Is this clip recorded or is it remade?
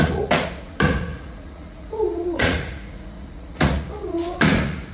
remade